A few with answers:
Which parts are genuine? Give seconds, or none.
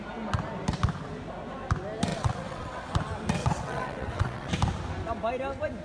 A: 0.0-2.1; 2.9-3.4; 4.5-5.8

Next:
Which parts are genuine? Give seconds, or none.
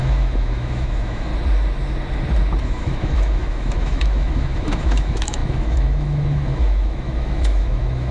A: 1.3-2.6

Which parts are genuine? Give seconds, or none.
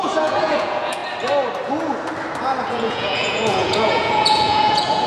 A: 1.0-2.7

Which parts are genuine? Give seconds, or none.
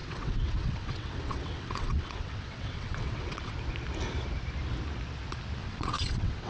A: 3.5-5.6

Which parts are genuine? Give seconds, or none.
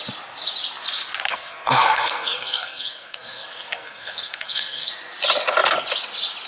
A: 0.0-1.3; 4.9-6.5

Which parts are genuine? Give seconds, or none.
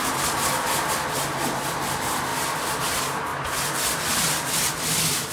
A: 0.0-5.3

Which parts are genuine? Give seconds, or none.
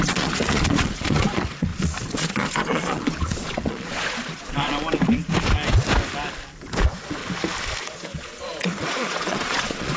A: 4.7-6.8; 7.2-7.8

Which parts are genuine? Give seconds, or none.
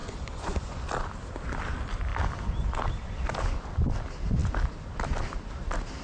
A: 0.8-6.0